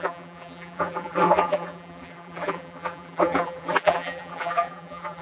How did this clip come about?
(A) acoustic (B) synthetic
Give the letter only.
B